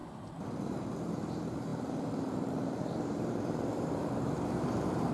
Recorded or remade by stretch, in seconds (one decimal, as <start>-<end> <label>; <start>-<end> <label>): 0.0-1.0 recorded; 1.0-5.1 remade